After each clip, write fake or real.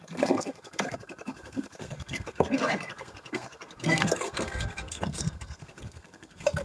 fake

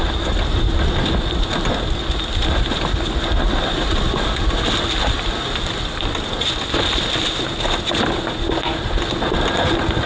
real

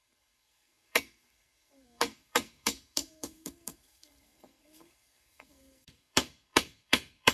fake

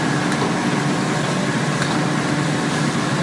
fake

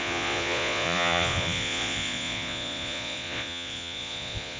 fake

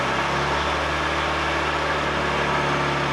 real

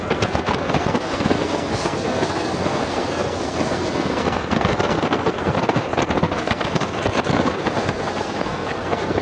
fake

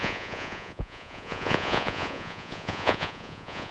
fake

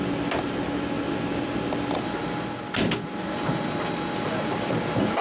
real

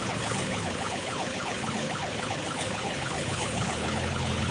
fake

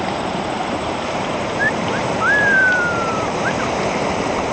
fake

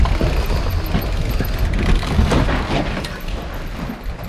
real